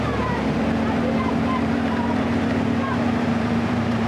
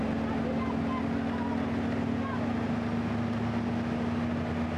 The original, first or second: second